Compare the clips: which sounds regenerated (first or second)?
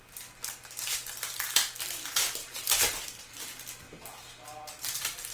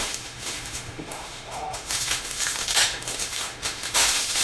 second